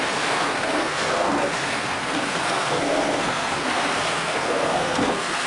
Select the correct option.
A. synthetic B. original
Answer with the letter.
A